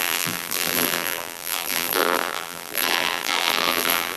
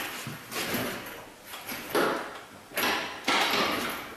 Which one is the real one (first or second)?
second